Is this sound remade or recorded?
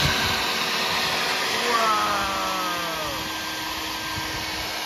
recorded